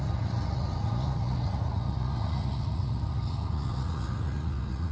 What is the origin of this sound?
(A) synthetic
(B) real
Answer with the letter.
A